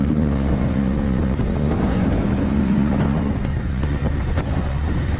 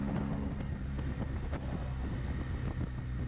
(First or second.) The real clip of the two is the second